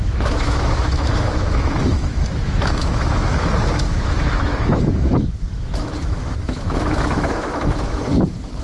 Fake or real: fake